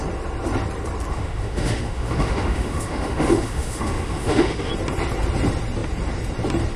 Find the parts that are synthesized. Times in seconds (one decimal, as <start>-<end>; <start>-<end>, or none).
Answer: 1.1-4.7